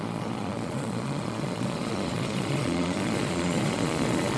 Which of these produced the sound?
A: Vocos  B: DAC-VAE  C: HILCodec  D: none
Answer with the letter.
A